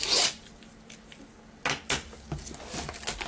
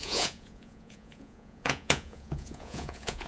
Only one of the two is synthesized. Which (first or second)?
second